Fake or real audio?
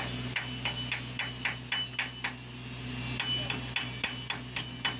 real